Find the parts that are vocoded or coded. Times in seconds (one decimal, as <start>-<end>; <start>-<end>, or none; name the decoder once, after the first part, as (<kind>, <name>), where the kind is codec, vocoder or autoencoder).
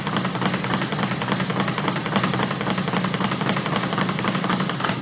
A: none